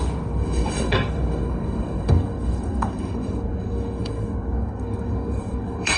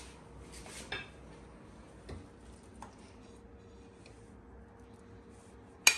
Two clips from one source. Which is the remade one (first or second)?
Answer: first